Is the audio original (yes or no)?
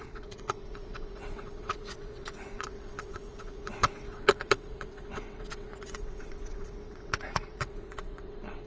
no